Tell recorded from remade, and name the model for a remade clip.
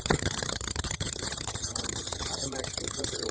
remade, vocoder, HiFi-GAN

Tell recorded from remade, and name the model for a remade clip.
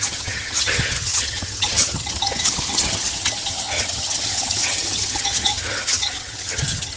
remade, vocoder, HiFi-GAN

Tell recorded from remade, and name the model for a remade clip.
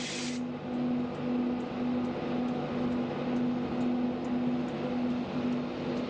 recorded